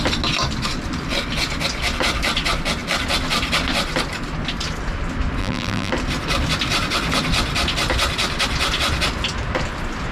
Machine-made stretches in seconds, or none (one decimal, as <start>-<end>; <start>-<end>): 5.4-5.9